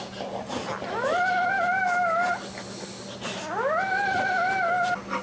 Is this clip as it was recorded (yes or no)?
yes